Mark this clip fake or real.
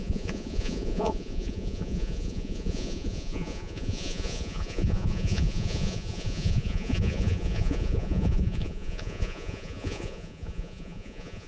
fake